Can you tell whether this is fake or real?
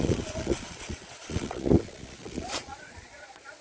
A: fake